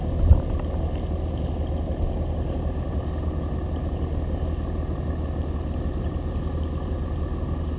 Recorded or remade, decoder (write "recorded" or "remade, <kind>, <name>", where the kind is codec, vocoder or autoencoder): recorded